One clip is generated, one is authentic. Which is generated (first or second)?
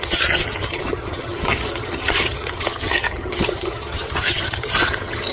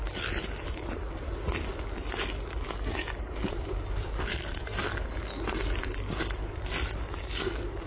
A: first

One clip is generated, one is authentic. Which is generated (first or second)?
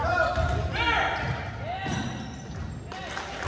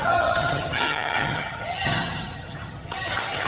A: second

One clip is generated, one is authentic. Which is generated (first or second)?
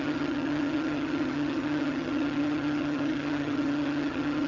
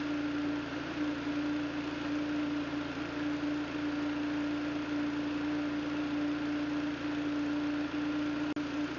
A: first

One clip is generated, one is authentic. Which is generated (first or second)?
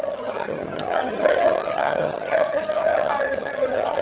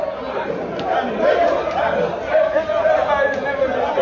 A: first